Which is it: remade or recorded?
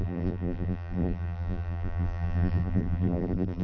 remade